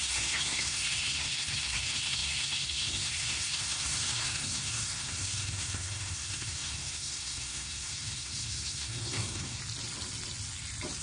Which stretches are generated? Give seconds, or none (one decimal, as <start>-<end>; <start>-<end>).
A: 0.0-9.6